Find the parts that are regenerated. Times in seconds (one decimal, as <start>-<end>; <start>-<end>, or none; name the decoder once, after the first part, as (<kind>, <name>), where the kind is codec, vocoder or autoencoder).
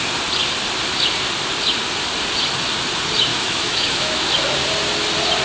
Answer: 3.3-4.3 (autoencoder, DAC-VAE)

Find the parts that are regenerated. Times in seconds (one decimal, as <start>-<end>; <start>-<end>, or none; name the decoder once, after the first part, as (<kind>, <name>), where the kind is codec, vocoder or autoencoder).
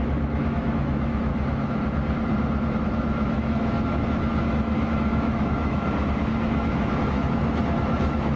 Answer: 0.0-1.3 (autoencoder, DAC-VAE); 2.7-8.4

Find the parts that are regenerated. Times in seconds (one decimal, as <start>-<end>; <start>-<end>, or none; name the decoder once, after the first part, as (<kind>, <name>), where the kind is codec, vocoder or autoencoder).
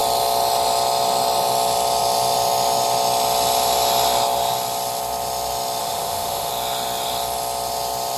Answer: 5.8-6.5 (autoencoder, DAC-VAE)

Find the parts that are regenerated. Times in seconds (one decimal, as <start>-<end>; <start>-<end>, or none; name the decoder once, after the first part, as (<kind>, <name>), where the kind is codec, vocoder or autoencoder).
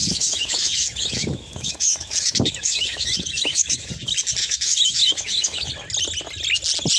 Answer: 0.0-3.9 (autoencoder, DAC-VAE); 4.4-5.7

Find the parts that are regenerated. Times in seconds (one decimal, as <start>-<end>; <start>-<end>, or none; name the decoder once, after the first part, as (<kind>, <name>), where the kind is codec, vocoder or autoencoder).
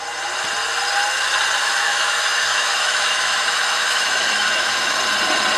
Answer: 1.6-5.0 (autoencoder, DAC-VAE)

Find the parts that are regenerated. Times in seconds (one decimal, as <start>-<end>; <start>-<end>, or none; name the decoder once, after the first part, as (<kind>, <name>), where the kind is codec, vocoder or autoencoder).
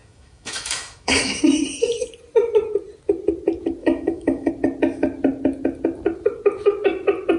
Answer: 0.0-1.4 (autoencoder, DAC-VAE); 3.8-4.5